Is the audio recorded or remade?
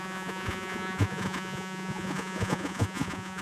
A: remade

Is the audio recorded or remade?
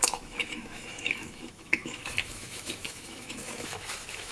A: remade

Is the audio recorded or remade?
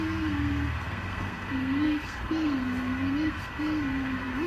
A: remade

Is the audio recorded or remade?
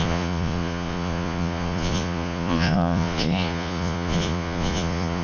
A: remade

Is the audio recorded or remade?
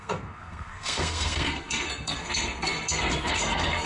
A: remade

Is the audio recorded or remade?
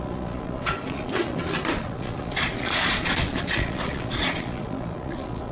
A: remade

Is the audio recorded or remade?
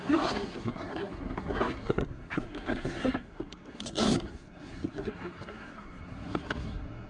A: remade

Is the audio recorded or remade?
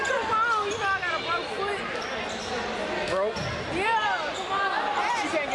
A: recorded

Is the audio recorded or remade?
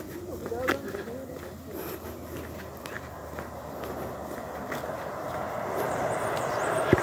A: recorded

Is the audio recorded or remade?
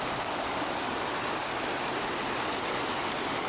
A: recorded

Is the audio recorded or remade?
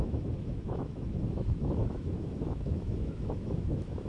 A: remade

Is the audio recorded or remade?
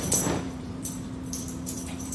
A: remade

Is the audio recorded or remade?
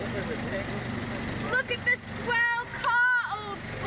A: recorded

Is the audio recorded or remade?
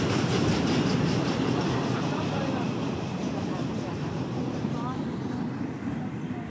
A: remade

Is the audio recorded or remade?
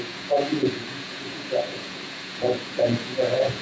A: remade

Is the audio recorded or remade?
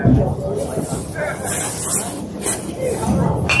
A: recorded